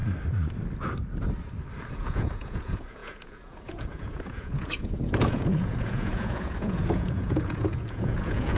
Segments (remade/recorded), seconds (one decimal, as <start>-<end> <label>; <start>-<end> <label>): 0.0-1.9 recorded; 1.9-8.6 remade